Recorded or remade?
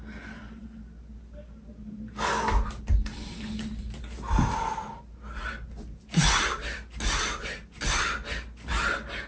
recorded